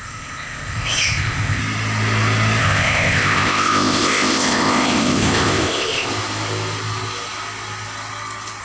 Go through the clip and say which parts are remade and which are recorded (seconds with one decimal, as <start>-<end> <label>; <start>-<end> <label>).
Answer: 0.0-1.6 remade; 1.6-2.6 recorded; 2.6-6.1 remade; 6.1-8.6 recorded

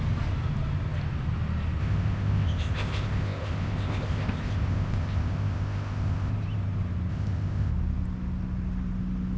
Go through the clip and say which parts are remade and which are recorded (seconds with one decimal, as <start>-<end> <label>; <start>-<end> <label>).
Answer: 0.0-1.8 recorded; 1.8-6.3 remade; 6.3-7.1 recorded; 7.1-7.7 remade; 7.7-9.4 recorded